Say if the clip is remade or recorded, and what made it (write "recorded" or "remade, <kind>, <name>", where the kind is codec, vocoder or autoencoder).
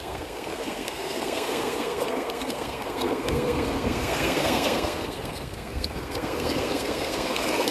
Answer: remade, codec, SNAC